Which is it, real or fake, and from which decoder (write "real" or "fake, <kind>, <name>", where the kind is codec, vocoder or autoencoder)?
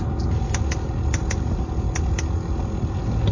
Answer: real